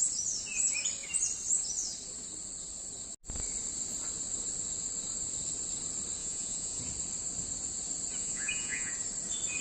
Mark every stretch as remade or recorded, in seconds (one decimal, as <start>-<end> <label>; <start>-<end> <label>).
0.0-6.2 recorded; 6.2-6.8 remade; 6.8-8.2 recorded; 8.2-8.9 remade; 8.9-9.6 recorded